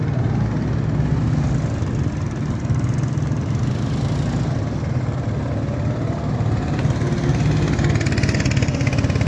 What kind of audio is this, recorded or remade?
recorded